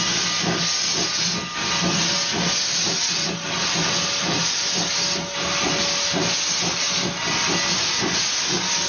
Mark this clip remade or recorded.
recorded